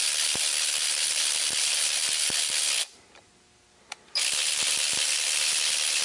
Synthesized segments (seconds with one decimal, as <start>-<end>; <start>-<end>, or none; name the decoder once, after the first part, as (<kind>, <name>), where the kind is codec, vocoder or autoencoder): none